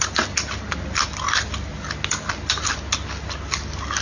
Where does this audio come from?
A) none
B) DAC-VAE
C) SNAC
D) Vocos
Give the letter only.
A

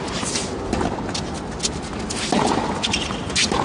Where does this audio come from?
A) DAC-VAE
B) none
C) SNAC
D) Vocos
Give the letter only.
B